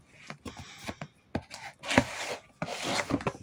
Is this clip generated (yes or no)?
no